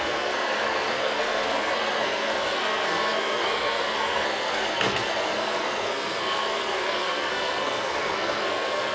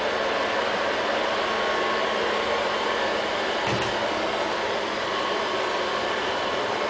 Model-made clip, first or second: first